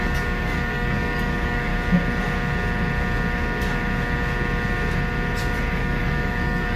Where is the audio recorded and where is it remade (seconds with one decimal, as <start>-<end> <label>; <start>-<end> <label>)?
0.0-1.7 remade; 1.7-5.7 recorded; 5.7-6.8 remade